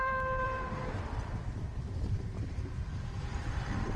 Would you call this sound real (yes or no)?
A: no